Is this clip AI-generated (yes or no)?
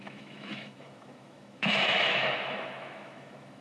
yes